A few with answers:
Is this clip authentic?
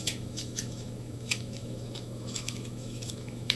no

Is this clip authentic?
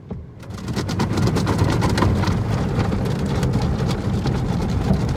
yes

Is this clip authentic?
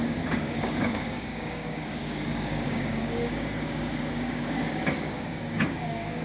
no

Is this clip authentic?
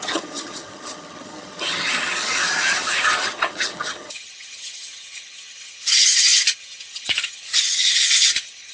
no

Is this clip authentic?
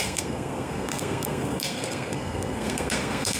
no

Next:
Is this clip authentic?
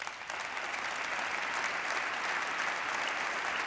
yes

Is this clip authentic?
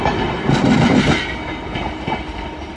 yes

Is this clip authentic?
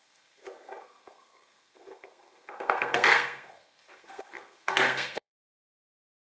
no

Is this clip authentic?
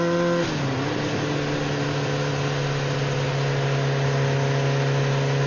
yes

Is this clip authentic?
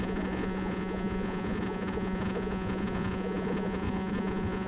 no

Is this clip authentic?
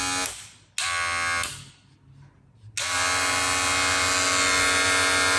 yes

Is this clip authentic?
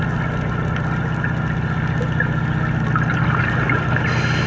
yes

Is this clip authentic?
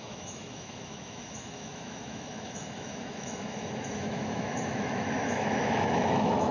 no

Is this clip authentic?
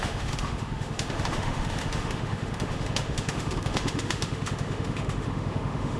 no